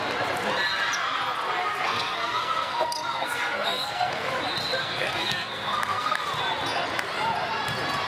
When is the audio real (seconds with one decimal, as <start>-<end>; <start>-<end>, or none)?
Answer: 0.0-1.6; 4.3-4.8; 6.2-8.1